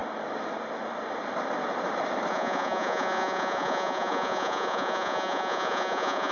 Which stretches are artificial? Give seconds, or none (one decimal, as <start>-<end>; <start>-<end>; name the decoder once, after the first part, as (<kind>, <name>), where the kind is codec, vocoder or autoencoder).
2.3-6.3 (vocoder, Vocos)